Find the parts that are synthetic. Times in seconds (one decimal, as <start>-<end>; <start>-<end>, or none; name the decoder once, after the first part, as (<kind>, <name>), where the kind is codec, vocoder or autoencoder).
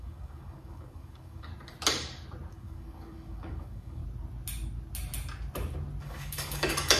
0.0-1.5 (codec, DAC); 2.5-4.0; 6.0-7.0